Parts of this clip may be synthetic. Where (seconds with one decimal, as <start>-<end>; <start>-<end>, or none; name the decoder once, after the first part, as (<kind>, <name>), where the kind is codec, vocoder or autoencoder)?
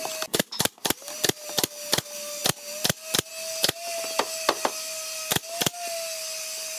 none